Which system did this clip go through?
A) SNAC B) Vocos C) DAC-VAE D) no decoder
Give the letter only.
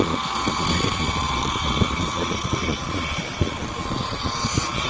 B